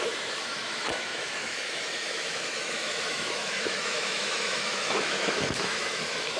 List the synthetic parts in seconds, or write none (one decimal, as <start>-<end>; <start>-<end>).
0.0-6.4